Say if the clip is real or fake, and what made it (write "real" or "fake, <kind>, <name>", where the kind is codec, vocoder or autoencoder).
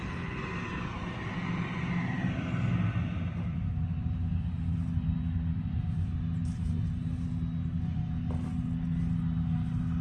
real